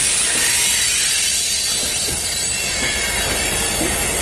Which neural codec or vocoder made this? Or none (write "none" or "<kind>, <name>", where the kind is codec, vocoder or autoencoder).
none